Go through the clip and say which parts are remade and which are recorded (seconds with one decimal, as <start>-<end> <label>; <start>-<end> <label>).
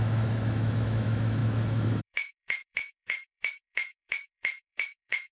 0.0-5.3 remade